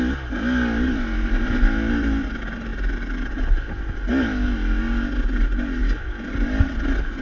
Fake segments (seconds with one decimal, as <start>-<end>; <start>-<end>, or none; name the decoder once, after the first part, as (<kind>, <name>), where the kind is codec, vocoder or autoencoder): none